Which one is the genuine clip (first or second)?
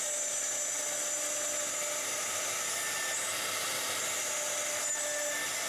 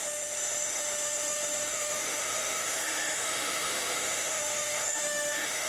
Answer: first